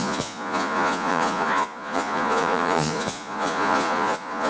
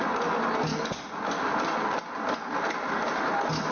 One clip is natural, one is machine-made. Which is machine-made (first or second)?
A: first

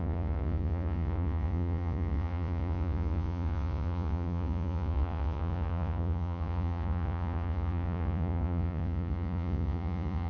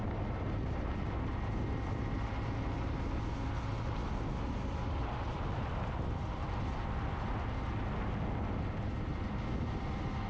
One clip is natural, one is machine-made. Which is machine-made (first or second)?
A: first